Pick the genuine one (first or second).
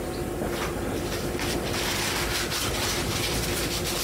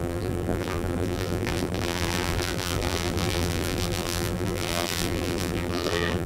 first